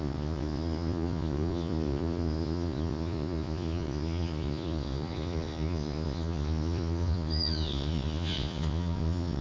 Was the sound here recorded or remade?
remade